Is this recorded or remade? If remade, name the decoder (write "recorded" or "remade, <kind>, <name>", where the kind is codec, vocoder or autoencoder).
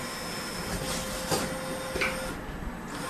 recorded